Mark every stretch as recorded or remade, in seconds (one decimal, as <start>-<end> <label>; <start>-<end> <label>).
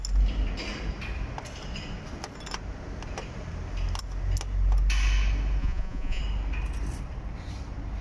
0.0-5.6 recorded; 5.6-6.2 remade; 6.2-8.0 recorded